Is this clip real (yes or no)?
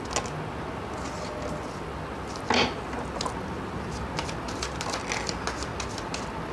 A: yes